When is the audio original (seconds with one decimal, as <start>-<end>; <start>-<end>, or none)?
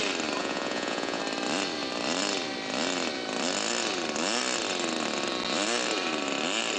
0.0-0.4; 1.2-6.8